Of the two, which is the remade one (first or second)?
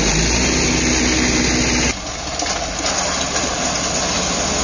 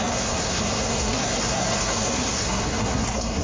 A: second